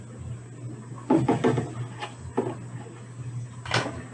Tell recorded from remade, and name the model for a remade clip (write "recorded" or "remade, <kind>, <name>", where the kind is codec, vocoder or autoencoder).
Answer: recorded